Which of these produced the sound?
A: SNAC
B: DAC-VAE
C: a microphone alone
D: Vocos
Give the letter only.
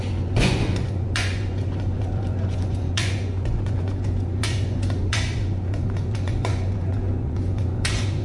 D